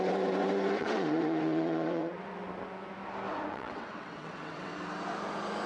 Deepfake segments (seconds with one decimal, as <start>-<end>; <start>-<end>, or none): 0.0-2.3; 3.5-4.7